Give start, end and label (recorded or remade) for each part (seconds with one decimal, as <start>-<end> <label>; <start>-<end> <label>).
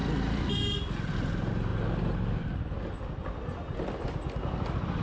0.0-5.0 recorded